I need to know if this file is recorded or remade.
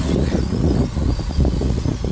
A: remade